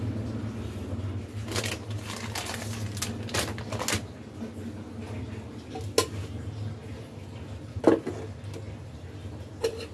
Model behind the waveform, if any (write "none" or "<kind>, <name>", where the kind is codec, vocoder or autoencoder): none